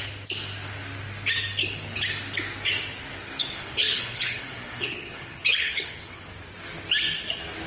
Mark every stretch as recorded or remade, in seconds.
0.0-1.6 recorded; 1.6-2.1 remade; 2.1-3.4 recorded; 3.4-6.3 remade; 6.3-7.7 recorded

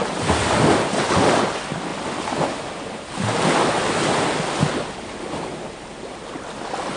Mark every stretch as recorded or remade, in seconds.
0.0-7.0 recorded

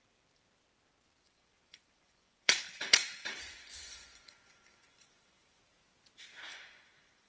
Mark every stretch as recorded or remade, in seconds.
0.0-1.2 recorded; 1.2-5.6 remade; 5.6-6.5 recorded; 6.5-7.3 remade